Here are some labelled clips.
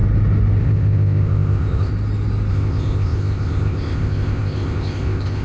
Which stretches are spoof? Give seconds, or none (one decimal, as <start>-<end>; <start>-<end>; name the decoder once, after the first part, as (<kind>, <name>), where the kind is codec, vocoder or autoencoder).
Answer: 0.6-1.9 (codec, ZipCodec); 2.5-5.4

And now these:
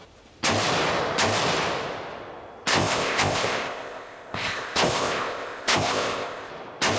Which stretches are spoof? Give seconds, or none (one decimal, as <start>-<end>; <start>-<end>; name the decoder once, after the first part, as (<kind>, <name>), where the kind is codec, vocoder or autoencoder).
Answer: 2.7-6.5 (codec, ZipCodec)

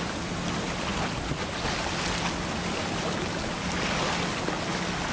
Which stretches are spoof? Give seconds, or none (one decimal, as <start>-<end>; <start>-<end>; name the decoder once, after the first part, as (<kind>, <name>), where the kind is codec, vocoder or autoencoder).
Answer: none